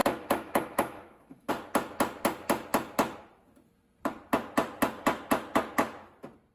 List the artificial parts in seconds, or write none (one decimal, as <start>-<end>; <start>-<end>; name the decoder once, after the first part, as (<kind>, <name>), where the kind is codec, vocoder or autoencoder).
0.0-1.5 (autoencoder, DAC-VAE)